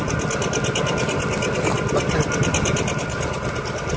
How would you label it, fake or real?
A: real